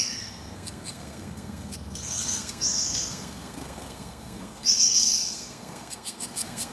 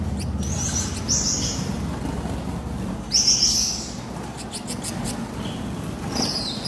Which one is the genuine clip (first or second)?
second